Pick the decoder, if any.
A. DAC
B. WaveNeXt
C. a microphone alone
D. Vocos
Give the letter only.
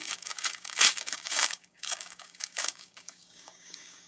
A